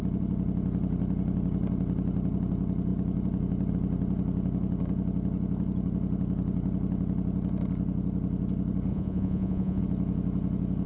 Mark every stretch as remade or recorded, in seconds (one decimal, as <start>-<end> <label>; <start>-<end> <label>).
0.0-8.9 recorded; 8.9-9.8 remade; 9.8-10.9 recorded